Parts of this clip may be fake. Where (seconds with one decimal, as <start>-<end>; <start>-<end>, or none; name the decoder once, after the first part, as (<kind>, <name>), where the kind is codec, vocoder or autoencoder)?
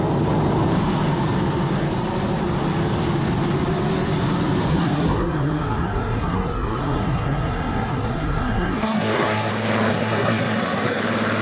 4.7-9.5 (codec, SNAC); 9.9-11.0